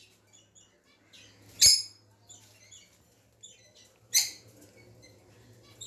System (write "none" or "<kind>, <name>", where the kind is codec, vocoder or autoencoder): none